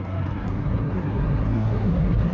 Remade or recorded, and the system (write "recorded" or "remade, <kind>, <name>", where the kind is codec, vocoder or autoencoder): remade, codec, SNAC